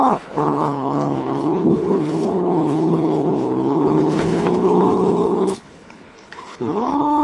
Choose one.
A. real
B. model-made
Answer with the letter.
B